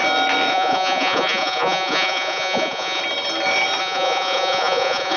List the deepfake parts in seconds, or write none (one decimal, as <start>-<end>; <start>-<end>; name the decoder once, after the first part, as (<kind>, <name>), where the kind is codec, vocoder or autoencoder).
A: 0.5-3.0 (vocoder, Vocos); 3.8-5.2